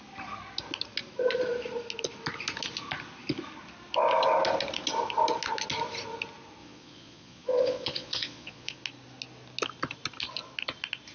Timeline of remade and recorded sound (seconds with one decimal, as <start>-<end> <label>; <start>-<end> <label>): 0.0-6.6 recorded; 6.6-8.8 remade; 8.8-11.1 recorded